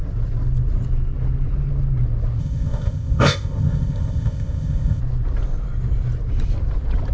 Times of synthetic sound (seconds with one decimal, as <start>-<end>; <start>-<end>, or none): 2.4-5.0

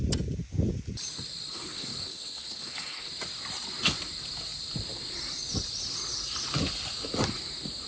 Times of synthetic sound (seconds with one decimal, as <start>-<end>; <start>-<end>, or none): 1.5-3.1

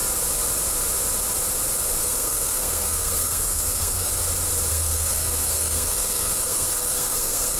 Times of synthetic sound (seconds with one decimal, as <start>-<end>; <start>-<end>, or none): 2.0-4.1; 4.7-7.6

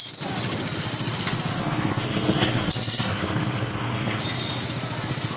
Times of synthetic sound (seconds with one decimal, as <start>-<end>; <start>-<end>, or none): 1.6-4.2

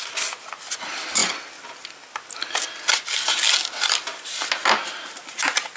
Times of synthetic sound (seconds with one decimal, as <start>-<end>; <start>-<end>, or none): none

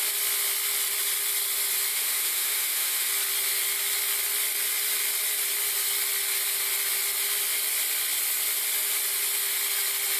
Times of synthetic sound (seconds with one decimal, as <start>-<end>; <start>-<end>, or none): 1.9-3.1

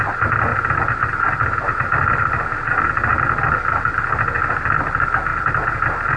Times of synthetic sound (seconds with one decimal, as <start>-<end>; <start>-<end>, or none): 0.5-2.8; 5.3-5.8